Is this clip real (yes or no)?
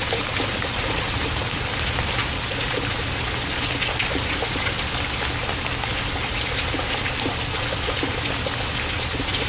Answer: yes